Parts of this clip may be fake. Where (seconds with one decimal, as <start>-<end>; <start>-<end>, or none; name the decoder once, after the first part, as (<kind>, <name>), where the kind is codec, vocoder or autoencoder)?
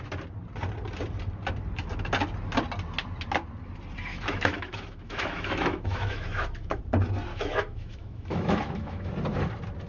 4.1-6.8 (autoencoder, DAC-VAE); 7.3-9.1